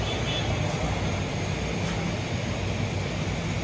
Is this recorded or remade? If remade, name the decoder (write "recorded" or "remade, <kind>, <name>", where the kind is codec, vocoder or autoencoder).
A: recorded